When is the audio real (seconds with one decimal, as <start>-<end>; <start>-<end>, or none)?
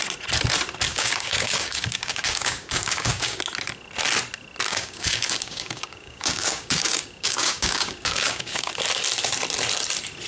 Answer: 0.0-0.9; 3.4-4.7; 8.7-10.3